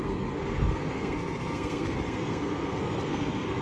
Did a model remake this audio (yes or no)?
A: yes